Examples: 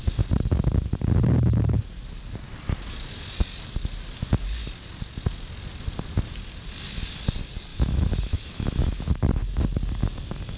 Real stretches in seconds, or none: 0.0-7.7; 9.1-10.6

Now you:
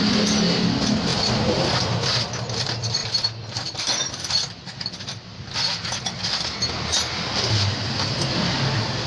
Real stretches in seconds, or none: 0.0-9.1

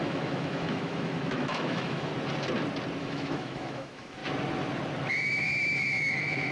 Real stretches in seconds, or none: 2.1-3.0; 4.2-5.1